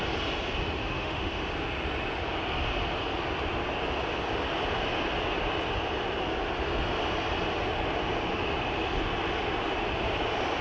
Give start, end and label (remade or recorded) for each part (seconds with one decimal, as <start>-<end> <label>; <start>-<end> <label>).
0.0-0.8 recorded; 0.8-1.5 remade; 1.5-10.6 recorded